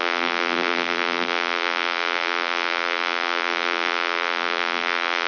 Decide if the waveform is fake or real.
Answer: fake